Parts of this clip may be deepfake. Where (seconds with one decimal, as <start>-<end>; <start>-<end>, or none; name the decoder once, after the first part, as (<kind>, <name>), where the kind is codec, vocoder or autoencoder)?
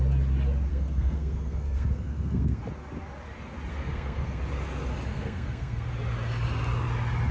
0.7-2.6 (codec, SNAC); 3.7-4.4; 5.1-5.9